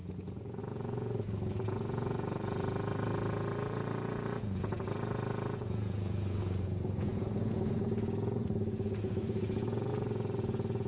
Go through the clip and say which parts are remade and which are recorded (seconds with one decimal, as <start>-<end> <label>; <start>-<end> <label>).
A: 0.0-10.9 remade